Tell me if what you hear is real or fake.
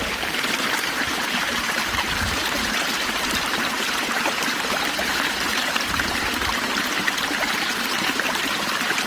fake